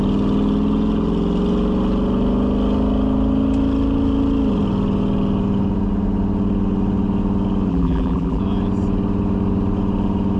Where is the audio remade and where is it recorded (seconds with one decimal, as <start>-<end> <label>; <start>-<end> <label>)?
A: 0.0-7.7 recorded; 7.7-8.4 remade; 8.4-10.4 recorded